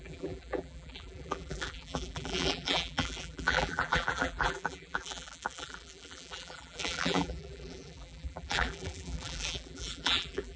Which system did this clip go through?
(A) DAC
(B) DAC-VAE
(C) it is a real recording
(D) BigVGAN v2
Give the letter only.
D